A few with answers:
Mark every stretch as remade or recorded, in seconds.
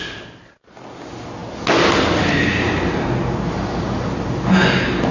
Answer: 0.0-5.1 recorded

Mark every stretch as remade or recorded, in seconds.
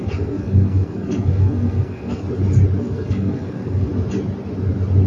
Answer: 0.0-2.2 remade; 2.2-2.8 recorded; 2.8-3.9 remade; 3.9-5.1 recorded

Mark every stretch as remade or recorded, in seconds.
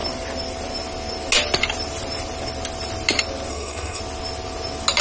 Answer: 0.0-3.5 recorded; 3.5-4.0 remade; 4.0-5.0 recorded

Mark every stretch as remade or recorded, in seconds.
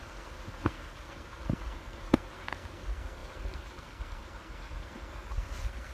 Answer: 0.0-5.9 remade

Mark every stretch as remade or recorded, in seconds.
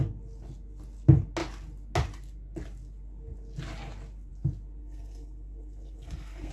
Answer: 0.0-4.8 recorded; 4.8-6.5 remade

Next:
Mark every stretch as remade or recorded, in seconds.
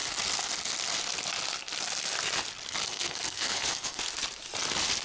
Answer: 0.0-2.8 recorded; 2.8-4.0 remade; 4.0-5.0 recorded